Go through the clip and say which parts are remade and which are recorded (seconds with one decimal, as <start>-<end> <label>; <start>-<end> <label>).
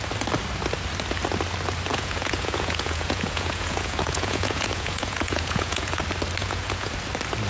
0.0-1.9 recorded; 1.9-6.0 remade; 6.0-6.4 recorded; 6.4-6.9 remade; 6.9-7.5 recorded